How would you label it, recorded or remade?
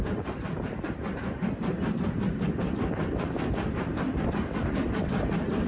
remade